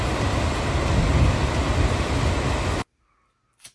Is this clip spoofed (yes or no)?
no